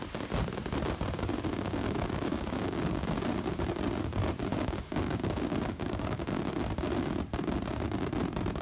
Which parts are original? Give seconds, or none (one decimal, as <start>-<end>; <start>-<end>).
0.0-1.5; 3.2-4.5; 6.5-8.6